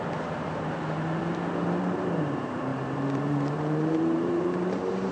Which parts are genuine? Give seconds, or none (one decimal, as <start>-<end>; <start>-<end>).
1.2-1.8